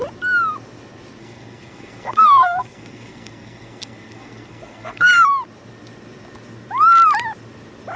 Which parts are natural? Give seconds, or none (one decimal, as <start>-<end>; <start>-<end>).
0.0-1.2; 5.1-8.0